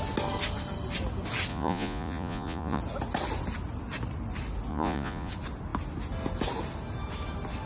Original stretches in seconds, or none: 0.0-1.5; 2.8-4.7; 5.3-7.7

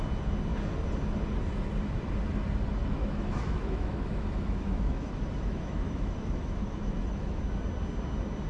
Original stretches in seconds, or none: 0.0-2.8; 7.4-8.5

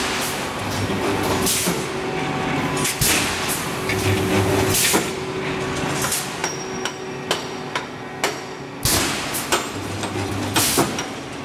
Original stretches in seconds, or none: 0.0-11.4

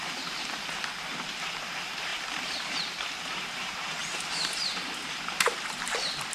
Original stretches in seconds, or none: 0.0-4.0; 5.2-6.3